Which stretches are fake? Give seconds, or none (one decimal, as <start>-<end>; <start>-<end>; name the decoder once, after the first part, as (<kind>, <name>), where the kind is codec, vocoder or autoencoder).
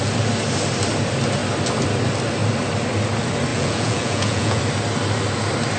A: 3.5-4.6 (vocoder, Vocos)